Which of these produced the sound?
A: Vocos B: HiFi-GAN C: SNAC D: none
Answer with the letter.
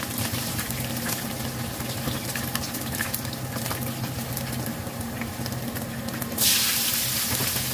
D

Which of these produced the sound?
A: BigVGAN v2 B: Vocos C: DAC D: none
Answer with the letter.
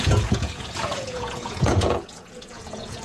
B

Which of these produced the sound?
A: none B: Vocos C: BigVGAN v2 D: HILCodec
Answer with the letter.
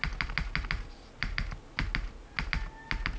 A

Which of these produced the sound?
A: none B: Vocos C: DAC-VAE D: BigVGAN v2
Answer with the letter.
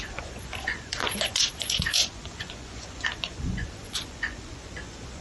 B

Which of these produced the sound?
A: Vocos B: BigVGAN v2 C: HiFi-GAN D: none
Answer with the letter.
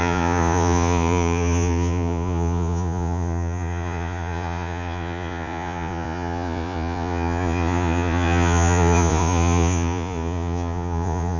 A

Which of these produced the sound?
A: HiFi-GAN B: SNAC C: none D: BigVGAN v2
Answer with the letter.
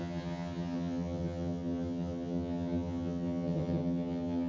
A